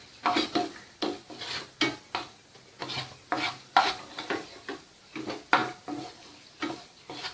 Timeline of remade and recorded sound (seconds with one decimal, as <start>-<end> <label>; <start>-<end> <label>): 0.0-7.3 recorded